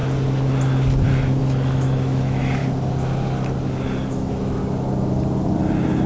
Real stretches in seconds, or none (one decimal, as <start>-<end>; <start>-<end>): 0.0-1.4; 2.6-4.1; 4.6-6.1